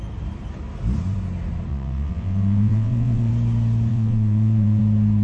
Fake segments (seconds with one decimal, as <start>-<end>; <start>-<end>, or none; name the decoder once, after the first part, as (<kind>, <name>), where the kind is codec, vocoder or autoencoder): 1.7-3.3 (vocoder, WaveNeXt); 3.9-4.8